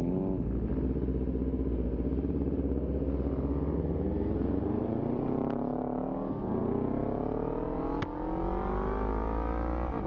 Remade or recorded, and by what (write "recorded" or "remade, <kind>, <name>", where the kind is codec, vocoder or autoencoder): recorded